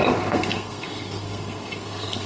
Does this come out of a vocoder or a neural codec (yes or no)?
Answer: yes